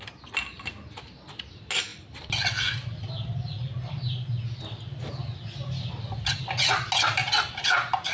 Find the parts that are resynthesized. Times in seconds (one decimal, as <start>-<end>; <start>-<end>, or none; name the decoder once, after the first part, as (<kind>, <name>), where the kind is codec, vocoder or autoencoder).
none